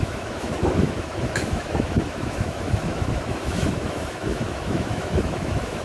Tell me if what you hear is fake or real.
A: fake